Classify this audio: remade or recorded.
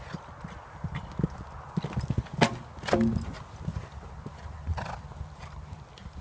recorded